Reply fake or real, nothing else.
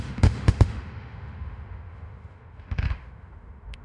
fake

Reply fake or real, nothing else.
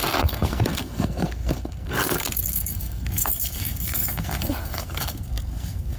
fake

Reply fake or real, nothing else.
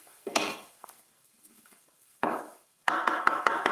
fake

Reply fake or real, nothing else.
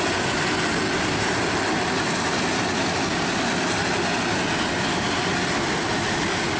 real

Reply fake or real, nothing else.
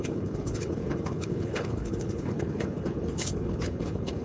fake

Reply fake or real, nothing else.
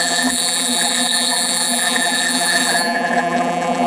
fake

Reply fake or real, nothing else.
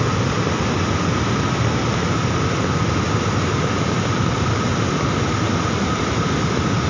real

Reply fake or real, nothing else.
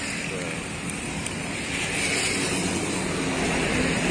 real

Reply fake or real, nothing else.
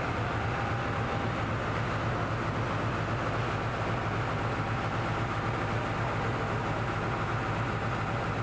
real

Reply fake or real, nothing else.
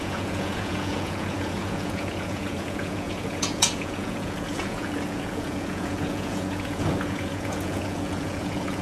fake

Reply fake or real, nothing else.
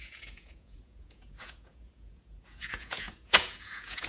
fake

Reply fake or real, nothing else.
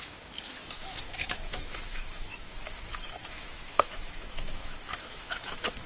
fake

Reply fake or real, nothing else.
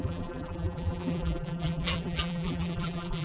fake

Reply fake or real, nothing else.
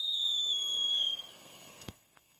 fake